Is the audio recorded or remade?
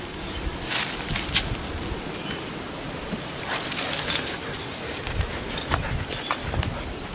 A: recorded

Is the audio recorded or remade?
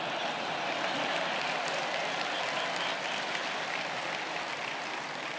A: recorded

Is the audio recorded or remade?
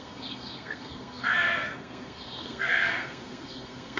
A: remade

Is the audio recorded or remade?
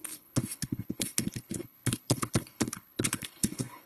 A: remade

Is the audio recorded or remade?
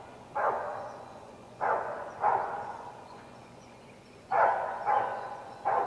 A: remade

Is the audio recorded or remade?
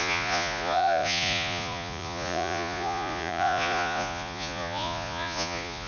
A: remade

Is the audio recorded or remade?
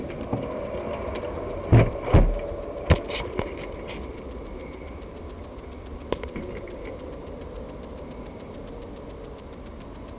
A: recorded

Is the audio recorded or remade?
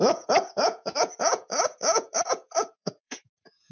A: remade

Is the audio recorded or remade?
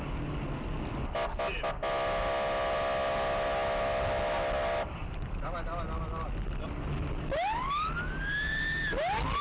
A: recorded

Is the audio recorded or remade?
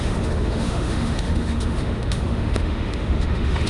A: remade